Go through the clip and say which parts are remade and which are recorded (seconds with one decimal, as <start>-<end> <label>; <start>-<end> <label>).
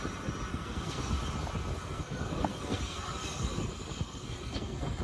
0.0-0.5 recorded; 0.5-1.2 remade; 1.2-1.7 recorded; 1.7-5.0 remade